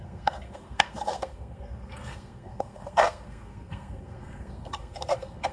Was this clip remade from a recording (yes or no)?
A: yes